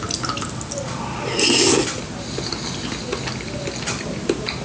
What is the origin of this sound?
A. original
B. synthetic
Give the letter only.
A